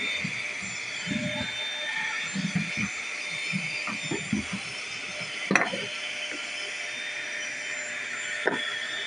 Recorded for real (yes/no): yes